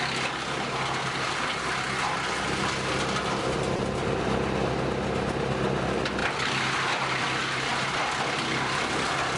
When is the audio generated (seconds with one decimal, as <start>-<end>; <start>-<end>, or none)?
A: none